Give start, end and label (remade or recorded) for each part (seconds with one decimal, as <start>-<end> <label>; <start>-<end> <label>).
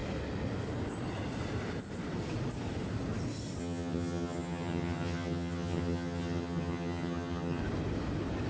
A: 0.0-3.6 recorded; 3.6-7.6 remade; 7.6-8.5 recorded